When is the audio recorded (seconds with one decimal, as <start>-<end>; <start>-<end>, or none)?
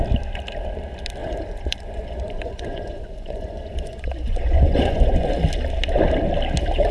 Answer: 0.0-1.2; 5.3-6.9